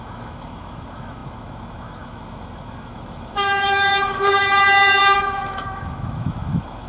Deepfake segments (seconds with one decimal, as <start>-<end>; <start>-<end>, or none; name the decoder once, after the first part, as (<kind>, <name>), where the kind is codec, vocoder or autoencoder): 0.0-6.9 (autoencoder, DAC-VAE)